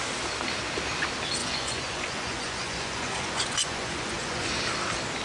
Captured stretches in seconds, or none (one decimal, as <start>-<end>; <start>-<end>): 0.0-1.4; 4.5-5.2